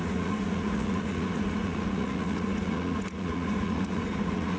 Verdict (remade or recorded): remade